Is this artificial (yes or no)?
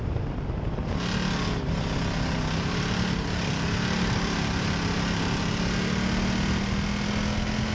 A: no